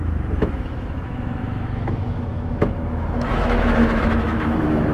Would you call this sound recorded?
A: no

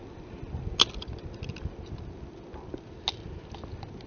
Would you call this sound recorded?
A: yes